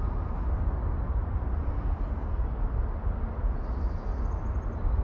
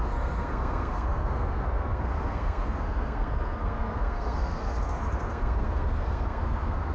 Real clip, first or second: first